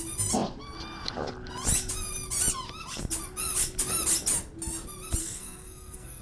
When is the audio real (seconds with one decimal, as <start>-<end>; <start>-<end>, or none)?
0.0-5.2